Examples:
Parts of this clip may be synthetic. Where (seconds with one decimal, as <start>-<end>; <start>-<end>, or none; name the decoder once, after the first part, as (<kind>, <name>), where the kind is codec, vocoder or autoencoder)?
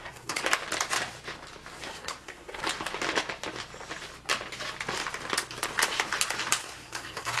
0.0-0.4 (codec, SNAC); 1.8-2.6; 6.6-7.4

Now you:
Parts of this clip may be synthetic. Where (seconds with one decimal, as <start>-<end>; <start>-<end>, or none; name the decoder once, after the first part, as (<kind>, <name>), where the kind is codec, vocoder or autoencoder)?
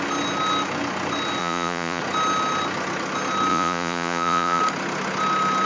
1.4-2.0 (vocoder, Vocos); 3.5-4.6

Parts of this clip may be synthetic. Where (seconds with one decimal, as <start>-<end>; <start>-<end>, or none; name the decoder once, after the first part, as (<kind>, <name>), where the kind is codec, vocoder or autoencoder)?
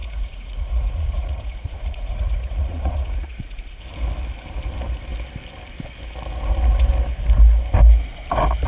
0.0-3.8 (vocoder, Vocos)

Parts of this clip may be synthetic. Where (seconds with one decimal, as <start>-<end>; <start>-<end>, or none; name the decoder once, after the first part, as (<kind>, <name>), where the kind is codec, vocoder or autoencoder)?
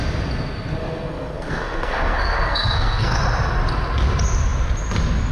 0.8-3.2 (codec, SNAC)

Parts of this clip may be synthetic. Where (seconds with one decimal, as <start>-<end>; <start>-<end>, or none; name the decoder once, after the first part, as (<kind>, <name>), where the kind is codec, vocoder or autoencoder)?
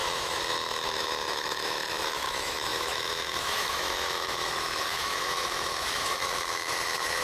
0.0-7.2 (autoencoder, DAC-VAE)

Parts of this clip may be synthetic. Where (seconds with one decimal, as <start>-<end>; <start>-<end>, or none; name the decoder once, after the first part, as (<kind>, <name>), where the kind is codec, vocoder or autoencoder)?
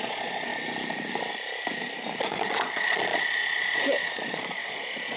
0.0-0.5 (vocoder, Vocos); 2.2-5.2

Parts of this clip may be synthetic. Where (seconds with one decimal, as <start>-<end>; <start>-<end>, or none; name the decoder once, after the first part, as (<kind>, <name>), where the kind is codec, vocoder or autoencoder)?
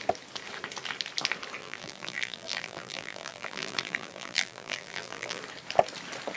1.6-5.4 (vocoder, BigVGAN v2)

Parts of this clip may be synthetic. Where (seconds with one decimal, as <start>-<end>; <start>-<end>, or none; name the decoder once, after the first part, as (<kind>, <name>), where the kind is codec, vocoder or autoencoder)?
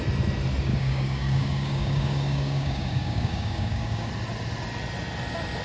0.7-4.1 (codec, DAC)